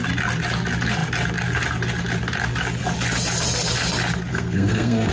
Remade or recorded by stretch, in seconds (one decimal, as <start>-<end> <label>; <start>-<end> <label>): 0.0-4.3 recorded; 4.3-5.1 remade